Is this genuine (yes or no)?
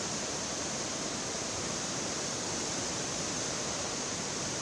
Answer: yes